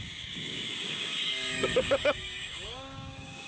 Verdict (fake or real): fake